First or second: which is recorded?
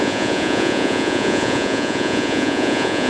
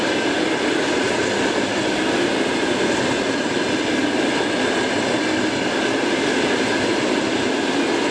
second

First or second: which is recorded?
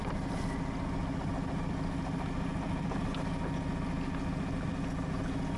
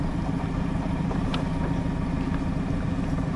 first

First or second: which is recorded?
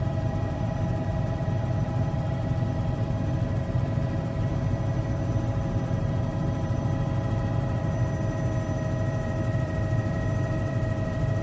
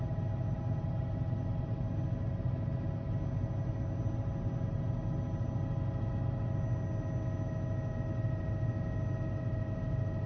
second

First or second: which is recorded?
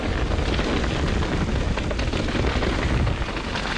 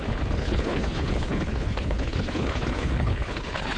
first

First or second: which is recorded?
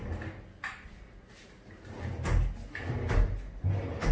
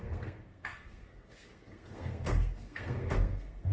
first